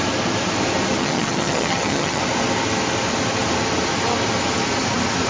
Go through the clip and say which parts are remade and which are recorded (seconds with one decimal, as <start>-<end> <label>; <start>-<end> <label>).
0.0-1.0 recorded; 1.0-2.2 remade; 2.2-5.3 recorded